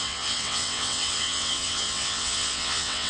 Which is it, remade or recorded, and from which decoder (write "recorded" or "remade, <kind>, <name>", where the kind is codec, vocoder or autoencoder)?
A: remade, vocoder, WaveNeXt